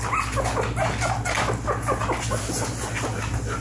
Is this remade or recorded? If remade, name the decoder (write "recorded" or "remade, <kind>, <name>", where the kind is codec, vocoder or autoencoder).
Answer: recorded